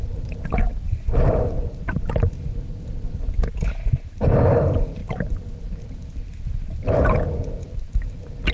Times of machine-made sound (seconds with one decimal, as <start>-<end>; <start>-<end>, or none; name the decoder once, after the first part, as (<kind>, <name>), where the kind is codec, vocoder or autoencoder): none